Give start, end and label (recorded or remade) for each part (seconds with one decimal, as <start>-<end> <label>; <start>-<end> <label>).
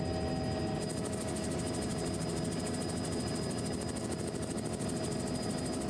0.0-5.9 recorded